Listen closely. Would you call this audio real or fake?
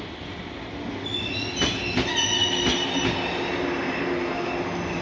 real